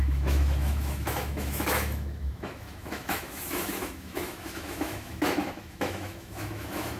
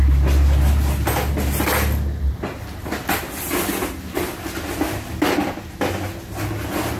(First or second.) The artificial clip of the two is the first